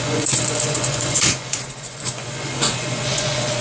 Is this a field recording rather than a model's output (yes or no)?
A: no